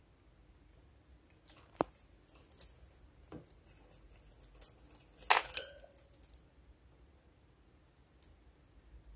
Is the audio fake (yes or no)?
no